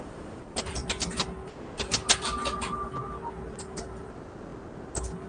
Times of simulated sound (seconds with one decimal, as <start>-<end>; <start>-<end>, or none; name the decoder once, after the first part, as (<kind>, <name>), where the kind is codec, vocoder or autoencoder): none

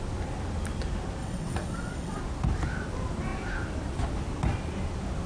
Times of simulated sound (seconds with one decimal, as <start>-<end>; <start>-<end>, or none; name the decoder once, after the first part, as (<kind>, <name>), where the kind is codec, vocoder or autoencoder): 1.2-2.2 (vocoder, WaveNeXt)